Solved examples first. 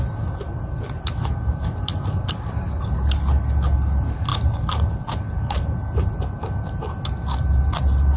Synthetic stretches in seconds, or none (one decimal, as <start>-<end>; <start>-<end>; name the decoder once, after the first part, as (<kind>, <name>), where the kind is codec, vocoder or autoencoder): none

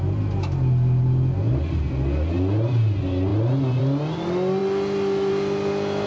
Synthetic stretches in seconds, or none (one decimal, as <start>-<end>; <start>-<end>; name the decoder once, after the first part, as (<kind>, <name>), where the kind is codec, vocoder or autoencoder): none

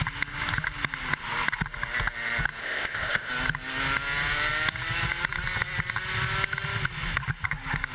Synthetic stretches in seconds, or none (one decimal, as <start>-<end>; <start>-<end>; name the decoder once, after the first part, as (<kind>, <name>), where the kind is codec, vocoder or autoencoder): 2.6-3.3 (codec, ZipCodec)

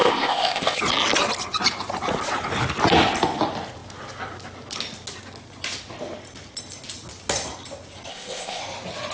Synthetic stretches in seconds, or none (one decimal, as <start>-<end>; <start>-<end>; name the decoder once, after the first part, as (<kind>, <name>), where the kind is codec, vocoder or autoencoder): 0.0-0.8 (codec, ZipCodec); 8.1-8.6